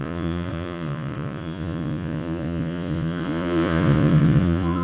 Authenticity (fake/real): fake